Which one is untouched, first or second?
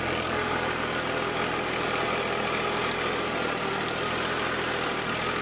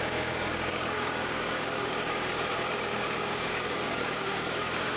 first